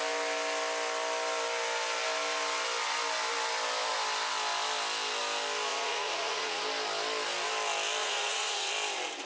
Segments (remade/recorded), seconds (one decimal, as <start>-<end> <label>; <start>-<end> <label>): 0.0-5.7 recorded; 5.7-6.6 remade; 6.6-8.0 recorded; 8.0-8.7 remade; 8.7-9.3 recorded